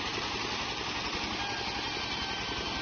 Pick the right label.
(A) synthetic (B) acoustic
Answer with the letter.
B